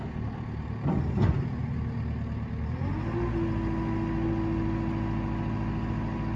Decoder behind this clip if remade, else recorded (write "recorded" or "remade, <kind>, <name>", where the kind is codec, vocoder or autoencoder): recorded